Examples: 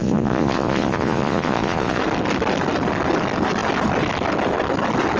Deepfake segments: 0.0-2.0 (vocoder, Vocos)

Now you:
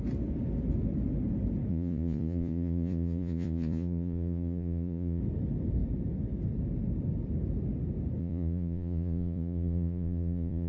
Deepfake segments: 1.7-5.2 (vocoder, Vocos); 8.2-10.7

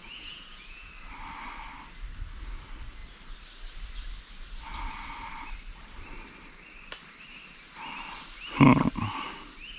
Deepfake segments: 0.0-0.9 (vocoder, Vocos)

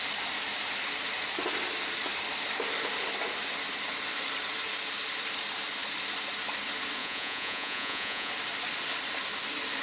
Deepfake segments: 7.0-8.3 (vocoder, Vocos)

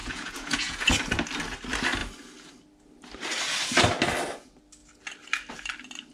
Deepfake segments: 0.0-0.9 (vocoder, Vocos)